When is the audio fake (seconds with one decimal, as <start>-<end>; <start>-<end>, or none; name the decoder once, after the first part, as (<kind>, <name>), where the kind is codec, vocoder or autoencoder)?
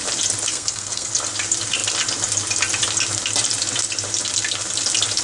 0.5-1.1 (codec, SNAC)